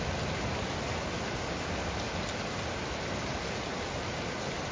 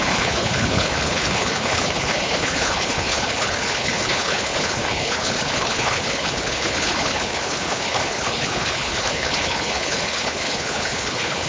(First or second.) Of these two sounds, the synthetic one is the second